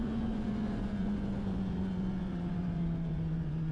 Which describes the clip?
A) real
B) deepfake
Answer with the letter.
B